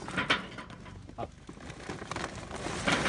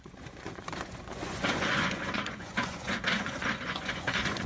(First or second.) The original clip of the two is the first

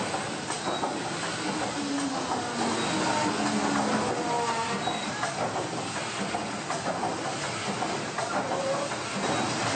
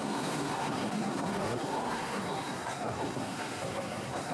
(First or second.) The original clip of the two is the first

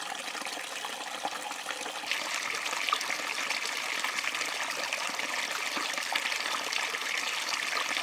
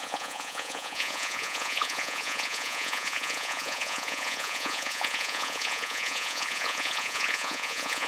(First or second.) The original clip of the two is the first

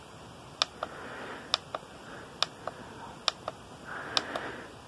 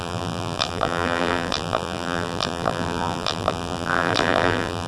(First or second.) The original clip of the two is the first